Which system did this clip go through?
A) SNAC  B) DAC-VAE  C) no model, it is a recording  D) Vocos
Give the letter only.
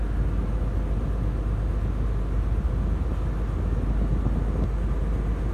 C